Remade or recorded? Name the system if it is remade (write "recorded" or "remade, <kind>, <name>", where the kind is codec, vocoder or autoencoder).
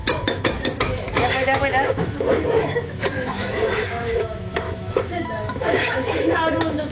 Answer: remade, autoencoder, DAC-VAE